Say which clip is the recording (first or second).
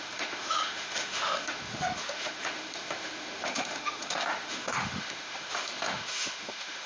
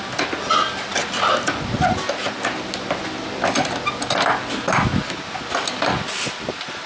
second